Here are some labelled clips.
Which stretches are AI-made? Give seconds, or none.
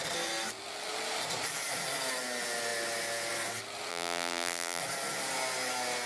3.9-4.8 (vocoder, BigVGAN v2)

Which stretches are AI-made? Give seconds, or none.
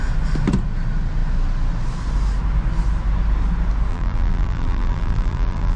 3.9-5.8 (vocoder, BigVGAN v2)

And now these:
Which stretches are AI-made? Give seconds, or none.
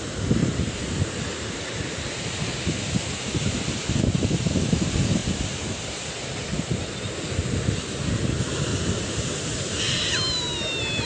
0.4-4.6 (vocoder, BigVGAN v2); 8.7-9.8